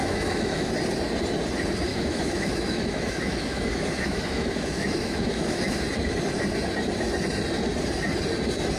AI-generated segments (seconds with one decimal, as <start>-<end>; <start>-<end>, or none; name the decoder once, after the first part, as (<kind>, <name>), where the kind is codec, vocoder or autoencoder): 0.0-0.7 (autoencoder, DAC-VAE); 1.9-5.8